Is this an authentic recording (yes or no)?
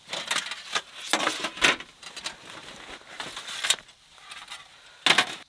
yes